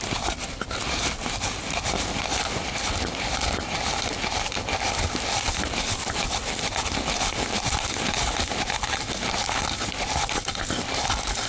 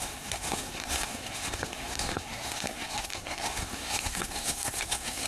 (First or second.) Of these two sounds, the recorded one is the first